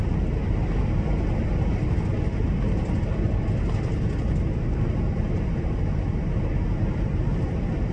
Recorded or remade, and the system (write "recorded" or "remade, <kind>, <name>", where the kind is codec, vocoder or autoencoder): recorded